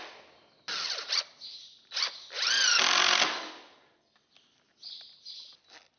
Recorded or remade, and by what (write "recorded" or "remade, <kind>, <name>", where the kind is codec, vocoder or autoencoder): recorded